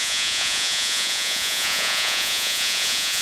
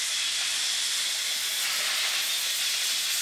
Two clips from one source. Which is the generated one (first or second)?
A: first